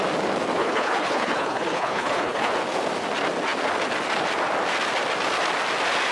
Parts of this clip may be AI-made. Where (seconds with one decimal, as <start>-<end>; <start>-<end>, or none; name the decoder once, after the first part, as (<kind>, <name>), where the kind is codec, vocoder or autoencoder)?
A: 0.6-2.5 (codec, HILCodec)